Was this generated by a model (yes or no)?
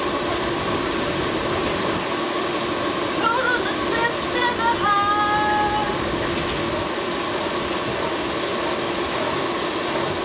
no